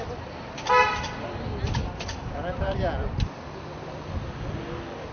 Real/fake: real